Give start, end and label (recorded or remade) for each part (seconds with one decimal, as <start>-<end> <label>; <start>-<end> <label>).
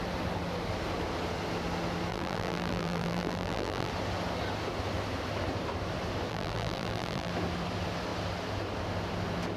0.0-2.1 recorded; 2.1-3.9 remade; 3.9-6.3 recorded; 6.3-7.3 remade; 7.3-9.6 recorded